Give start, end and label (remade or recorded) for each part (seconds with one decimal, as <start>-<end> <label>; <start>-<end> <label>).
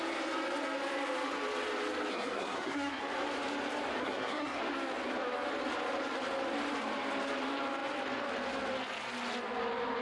0.0-2.1 recorded; 2.1-3.0 remade; 3.0-4.0 recorded; 4.0-4.6 remade; 4.6-10.0 recorded